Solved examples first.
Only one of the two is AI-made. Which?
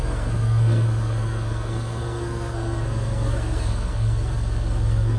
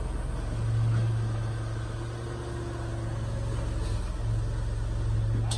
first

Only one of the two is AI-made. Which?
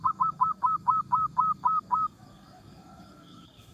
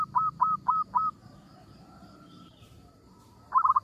first